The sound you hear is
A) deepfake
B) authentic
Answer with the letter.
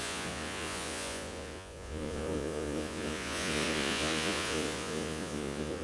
A